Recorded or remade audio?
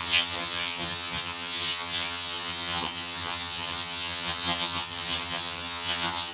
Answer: remade